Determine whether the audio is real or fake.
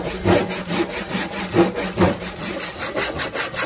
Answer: real